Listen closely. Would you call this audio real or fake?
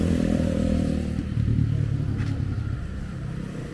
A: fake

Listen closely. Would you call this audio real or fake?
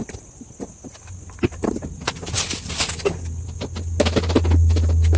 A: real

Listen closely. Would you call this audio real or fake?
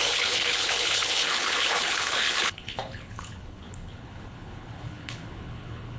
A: fake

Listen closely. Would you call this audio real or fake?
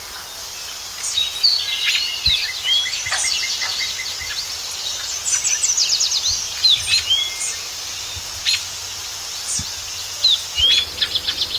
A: real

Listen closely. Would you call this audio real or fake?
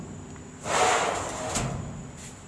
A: real